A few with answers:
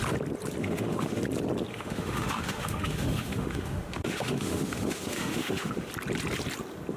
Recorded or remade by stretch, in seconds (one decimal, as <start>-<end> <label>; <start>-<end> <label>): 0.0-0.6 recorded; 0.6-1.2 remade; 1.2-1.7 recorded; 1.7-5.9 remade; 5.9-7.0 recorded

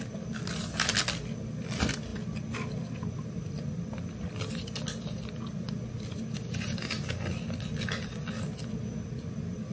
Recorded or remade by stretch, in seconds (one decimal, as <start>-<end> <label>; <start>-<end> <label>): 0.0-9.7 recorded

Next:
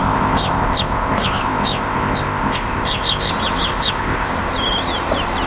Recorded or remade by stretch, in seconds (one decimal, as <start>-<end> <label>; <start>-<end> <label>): 0.0-3.3 remade; 3.3-3.7 recorded; 3.7-4.3 remade; 4.3-5.5 recorded